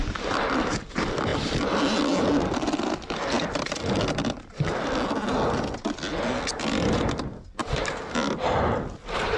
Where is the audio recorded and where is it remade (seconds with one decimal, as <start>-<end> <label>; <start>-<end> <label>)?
0.0-9.4 recorded